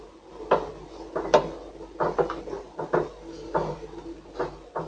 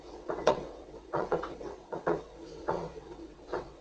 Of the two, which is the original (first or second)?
first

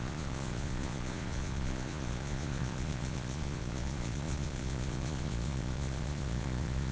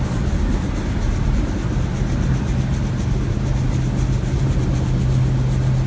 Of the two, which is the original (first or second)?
second